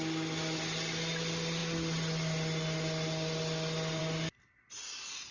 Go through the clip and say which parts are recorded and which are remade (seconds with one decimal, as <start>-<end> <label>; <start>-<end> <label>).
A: 0.0-5.3 recorded